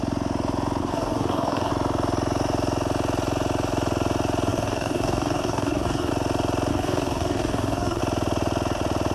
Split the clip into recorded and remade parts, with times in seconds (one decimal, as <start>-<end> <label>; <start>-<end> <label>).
0.0-0.8 recorded; 0.8-1.7 remade; 1.7-4.5 recorded; 4.5-6.1 remade; 6.1-6.7 recorded; 6.7-8.0 remade; 8.0-9.1 recorded